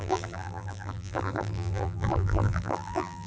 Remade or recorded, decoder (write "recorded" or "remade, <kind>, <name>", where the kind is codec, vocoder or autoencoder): remade, vocoder, BigVGAN v2